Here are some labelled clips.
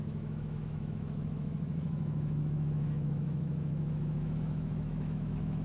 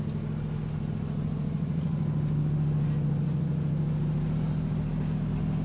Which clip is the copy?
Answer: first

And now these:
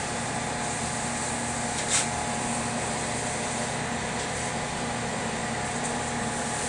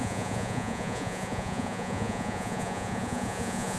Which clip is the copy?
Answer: second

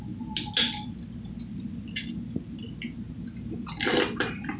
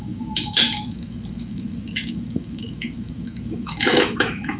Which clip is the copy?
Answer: second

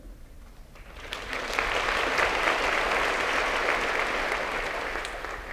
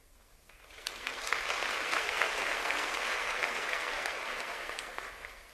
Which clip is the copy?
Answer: second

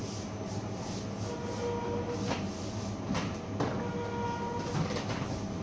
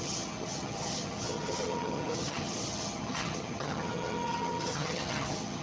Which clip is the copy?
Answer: second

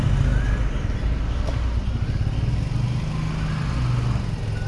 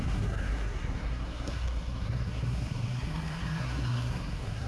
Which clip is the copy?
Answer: second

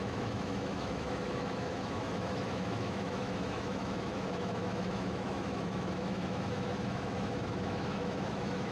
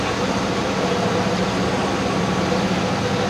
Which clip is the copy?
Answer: first